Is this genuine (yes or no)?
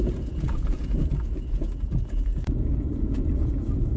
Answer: no